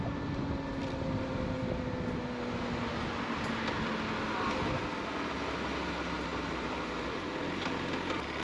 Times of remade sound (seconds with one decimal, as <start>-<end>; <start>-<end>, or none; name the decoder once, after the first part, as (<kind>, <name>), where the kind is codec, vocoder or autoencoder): 0.8-1.6 (vocoder, BigVGAN v2)